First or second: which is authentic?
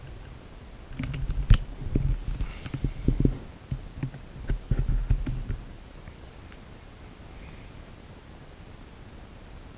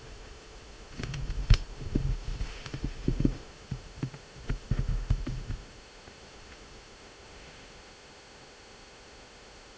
first